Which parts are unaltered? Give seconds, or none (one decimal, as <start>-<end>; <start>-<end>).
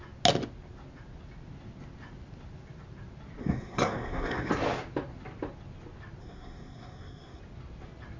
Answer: 0.0-3.4; 4.5-6.2; 7.4-8.2